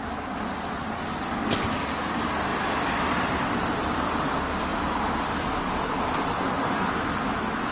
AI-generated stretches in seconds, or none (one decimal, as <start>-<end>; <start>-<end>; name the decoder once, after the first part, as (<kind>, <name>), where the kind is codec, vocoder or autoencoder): none